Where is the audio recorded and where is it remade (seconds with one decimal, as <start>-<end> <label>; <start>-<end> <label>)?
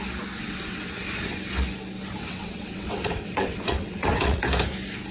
0.0-0.4 recorded; 0.4-1.0 remade; 1.0-2.2 recorded; 2.2-4.4 remade; 4.4-5.1 recorded